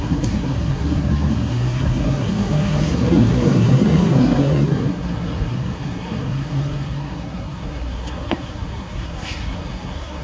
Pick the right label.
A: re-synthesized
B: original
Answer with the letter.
A